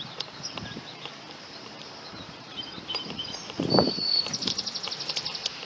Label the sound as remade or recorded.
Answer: remade